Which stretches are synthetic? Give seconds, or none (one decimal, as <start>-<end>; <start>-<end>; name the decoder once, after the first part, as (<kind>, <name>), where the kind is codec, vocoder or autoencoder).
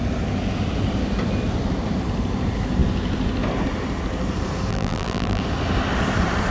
4.7-5.4 (vocoder, BigVGAN v2)